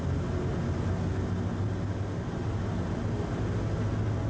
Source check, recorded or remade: recorded